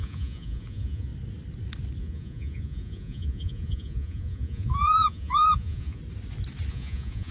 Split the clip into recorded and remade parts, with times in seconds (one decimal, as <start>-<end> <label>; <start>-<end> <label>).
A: 0.0-1.1 remade; 1.1-2.0 recorded; 2.0-6.0 remade; 6.0-6.7 recorded; 6.7-7.3 remade